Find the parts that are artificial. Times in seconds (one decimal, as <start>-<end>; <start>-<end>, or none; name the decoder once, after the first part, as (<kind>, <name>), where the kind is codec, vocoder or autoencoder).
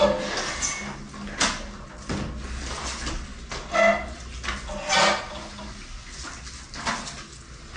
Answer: none